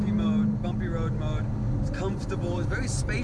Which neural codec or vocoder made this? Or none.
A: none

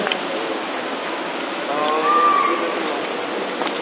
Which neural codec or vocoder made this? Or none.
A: none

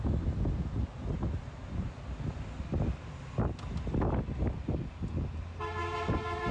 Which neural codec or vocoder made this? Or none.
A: none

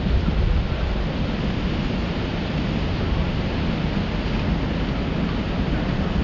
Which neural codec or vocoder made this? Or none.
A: none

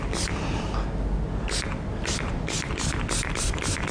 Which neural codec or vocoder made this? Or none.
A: none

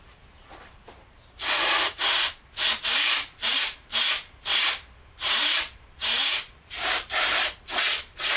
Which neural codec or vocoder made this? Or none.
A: vocoder, BigVGAN v2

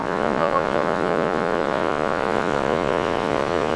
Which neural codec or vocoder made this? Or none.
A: vocoder, Vocos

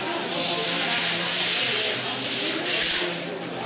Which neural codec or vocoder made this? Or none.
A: none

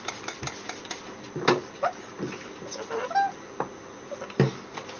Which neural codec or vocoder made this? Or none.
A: none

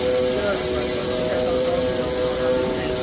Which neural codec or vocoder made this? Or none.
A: none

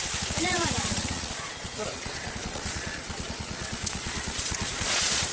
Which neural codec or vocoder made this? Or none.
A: vocoder, Vocos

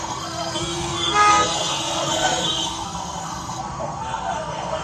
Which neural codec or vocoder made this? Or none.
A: codec, SNAC